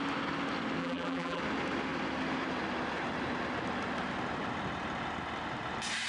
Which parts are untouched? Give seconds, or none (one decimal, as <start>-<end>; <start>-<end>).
0.0-0.8; 1.4-6.1